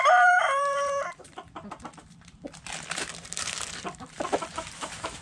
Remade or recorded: remade